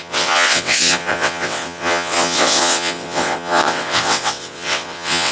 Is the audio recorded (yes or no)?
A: no